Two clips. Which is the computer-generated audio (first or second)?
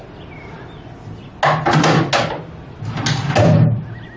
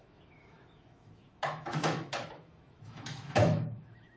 second